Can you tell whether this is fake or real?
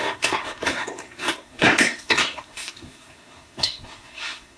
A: fake